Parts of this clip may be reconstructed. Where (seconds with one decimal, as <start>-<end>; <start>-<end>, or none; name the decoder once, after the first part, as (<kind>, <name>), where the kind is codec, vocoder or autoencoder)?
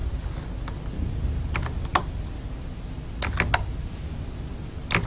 none